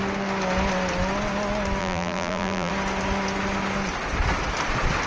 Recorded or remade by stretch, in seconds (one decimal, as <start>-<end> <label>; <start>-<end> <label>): 0.0-1.8 recorded; 1.8-2.7 remade; 2.7-5.1 recorded